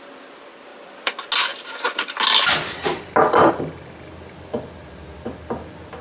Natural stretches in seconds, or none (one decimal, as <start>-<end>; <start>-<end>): 0.0-6.0